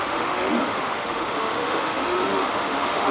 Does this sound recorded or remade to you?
remade